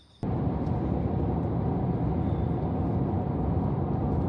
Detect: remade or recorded recorded